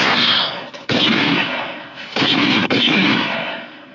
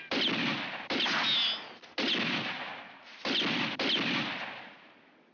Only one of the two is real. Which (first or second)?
second